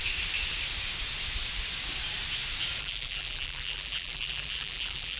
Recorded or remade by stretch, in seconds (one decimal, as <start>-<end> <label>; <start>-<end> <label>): 0.0-2.8 recorded; 2.8-5.2 remade